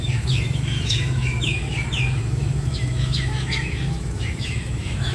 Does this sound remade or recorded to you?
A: remade